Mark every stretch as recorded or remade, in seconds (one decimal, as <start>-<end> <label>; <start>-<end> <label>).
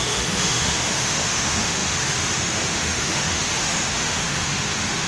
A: 0.0-5.1 remade